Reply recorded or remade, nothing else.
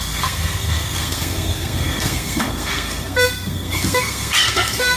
remade